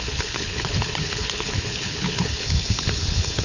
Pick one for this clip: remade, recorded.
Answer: remade